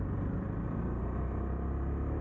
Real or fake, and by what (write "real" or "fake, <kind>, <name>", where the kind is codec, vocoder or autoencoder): real